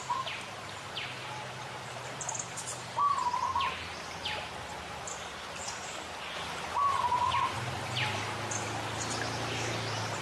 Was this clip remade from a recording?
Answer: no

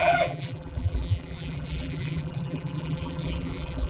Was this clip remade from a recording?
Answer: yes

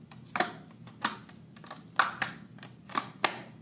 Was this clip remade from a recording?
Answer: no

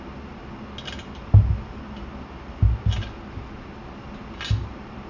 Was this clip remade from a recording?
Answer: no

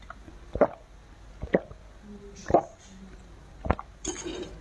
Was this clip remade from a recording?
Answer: no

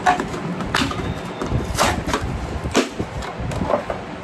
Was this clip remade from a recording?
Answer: no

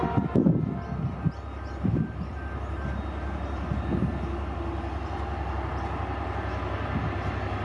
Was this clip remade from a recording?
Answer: no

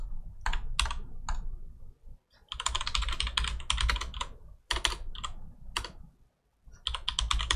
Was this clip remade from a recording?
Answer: no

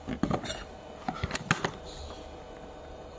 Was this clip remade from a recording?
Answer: no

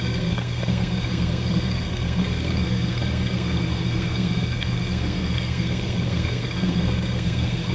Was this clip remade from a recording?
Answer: yes